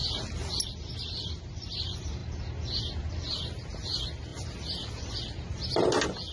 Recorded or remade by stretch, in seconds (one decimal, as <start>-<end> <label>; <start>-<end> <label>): 0.0-0.5 recorded; 0.5-2.2 remade; 2.2-3.1 recorded; 3.1-6.3 remade